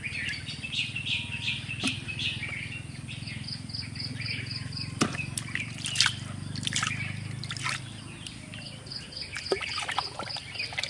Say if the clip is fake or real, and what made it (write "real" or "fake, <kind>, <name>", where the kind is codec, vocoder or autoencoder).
real